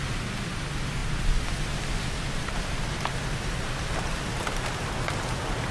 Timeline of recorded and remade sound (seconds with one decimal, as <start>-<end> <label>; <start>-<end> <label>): 0.0-5.7 recorded